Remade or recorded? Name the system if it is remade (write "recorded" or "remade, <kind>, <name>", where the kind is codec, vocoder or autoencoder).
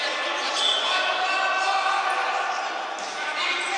recorded